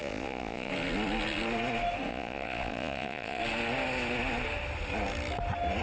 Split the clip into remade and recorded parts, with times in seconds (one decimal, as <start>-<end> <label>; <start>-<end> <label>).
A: 0.0-0.7 remade; 0.7-2.1 recorded; 2.1-3.4 remade; 3.4-5.8 recorded